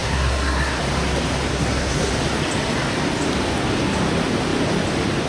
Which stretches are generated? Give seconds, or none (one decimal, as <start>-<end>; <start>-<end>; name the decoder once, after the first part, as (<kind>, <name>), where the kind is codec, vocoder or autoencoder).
0.0-0.8 (codec, SNAC); 1.5-2.1